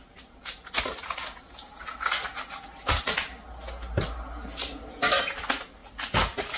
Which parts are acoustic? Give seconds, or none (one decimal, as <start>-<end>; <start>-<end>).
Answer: 0.0-6.6